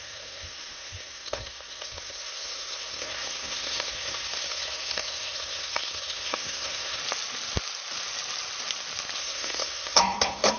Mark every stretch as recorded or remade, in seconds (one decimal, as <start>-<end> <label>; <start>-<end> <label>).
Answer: 0.0-7.0 remade; 7.0-9.2 recorded; 9.2-10.6 remade